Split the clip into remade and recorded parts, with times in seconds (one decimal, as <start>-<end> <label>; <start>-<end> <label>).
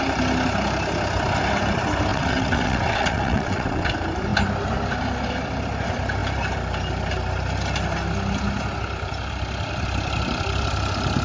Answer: 0.0-2.1 recorded; 2.1-3.9 remade; 3.9-11.2 recorded